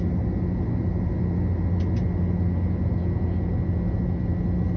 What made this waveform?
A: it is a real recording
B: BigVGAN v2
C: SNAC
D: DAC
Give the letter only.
A